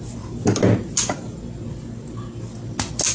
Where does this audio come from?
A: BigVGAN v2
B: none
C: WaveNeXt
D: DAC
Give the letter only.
B